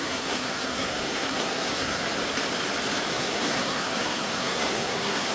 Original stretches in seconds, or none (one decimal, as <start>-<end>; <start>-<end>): 2.0-3.1